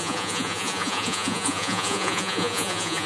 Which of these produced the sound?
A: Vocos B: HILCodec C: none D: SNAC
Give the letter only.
A